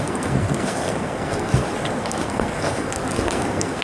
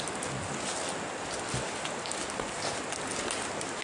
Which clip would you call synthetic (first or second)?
first